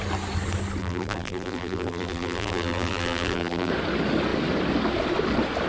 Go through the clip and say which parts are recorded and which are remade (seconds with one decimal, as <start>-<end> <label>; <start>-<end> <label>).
0.0-0.8 recorded; 0.8-3.7 remade; 3.7-5.7 recorded